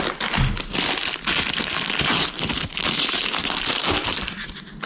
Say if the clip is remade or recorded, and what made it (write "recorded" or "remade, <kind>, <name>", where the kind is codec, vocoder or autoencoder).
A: recorded